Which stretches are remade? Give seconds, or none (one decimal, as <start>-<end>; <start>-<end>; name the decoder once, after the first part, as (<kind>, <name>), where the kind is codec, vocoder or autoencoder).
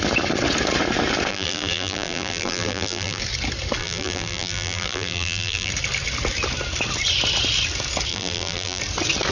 1.3-3.2 (vocoder, BigVGAN v2); 3.8-5.7; 8.1-8.8